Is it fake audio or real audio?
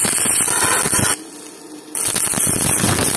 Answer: real